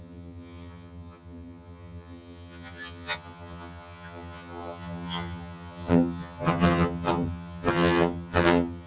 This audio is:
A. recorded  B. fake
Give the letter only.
B